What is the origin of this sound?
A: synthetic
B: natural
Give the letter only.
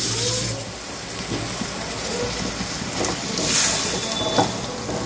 B